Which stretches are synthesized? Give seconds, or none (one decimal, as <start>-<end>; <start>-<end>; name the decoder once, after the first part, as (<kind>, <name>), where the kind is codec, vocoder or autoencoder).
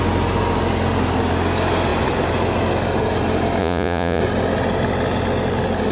3.6-4.2 (vocoder, Vocos)